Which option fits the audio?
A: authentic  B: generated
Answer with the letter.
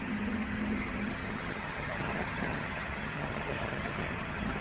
B